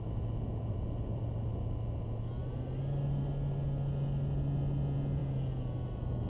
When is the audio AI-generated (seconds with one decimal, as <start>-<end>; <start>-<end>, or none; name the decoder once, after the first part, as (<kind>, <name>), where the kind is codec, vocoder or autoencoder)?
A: none